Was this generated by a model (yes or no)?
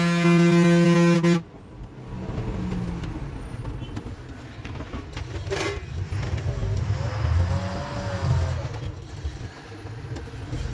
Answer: no